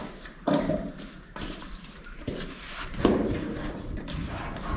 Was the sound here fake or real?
fake